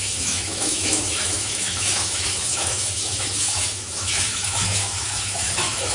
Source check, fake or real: fake